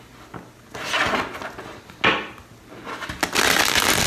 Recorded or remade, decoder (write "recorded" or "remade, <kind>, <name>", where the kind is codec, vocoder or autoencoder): recorded